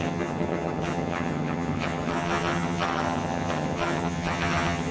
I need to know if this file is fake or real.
fake